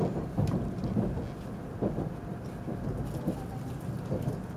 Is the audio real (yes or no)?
yes